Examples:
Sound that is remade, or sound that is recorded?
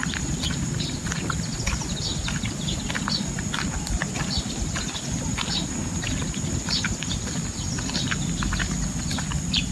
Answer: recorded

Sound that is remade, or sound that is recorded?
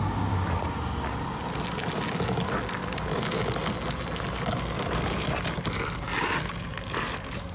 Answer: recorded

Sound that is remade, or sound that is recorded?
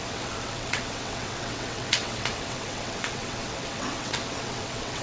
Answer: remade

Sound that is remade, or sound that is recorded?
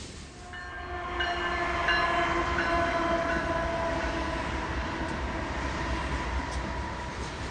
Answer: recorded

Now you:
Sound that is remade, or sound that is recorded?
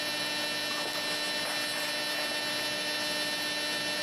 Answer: recorded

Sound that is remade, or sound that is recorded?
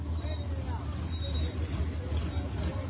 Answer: recorded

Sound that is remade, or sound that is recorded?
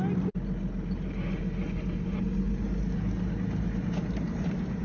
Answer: recorded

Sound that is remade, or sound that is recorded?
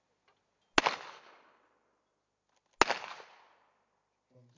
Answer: recorded